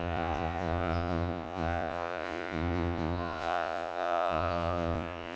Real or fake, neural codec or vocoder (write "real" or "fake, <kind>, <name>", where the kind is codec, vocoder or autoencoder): fake, vocoder, Vocos